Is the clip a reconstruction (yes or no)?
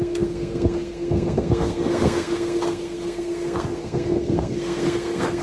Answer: yes